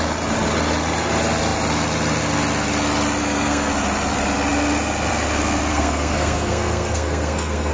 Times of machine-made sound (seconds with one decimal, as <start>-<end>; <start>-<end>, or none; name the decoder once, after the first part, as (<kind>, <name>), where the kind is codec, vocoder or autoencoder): 3.2-3.7 (codec, SNAC); 5.7-7.7